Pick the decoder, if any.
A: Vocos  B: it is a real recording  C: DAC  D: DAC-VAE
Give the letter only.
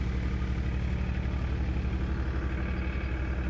B